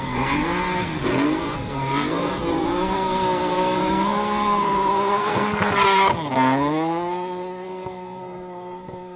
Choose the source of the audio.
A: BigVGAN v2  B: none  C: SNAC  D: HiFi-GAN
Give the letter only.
C